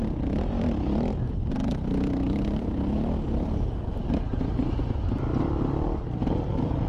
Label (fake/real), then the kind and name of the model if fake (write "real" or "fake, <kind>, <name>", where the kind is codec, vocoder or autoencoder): real